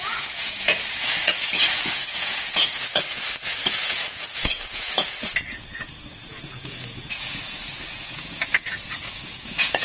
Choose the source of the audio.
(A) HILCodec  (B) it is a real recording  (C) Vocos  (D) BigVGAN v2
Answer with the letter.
C